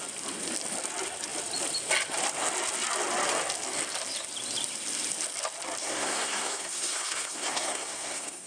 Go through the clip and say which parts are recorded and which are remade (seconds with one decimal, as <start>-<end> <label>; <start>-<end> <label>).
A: 0.0-5.8 recorded; 5.8-8.5 remade